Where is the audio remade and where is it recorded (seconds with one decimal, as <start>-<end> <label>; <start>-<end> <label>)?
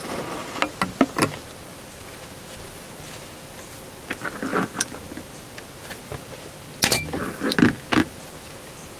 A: 0.0-9.0 recorded